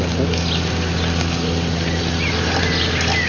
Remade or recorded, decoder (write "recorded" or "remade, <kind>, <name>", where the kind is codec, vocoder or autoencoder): recorded